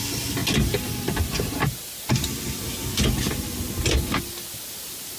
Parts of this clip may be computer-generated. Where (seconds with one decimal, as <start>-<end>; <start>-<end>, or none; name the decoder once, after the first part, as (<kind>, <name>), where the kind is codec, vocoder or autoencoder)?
none